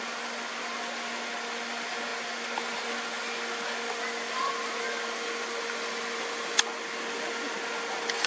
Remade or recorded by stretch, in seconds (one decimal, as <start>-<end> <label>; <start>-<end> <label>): 0.0-8.3 recorded